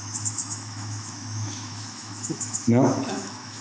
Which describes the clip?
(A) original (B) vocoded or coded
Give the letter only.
B